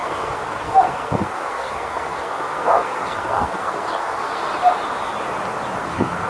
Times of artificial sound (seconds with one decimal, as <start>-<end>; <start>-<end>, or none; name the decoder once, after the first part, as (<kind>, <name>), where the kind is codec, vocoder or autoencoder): 0.0-4.5 (codec, SNAC); 5.8-6.3